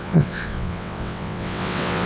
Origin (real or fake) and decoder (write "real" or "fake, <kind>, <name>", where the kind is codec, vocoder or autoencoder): fake, vocoder, WaveNeXt